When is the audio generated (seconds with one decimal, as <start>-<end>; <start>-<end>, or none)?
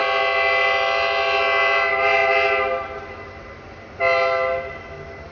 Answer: none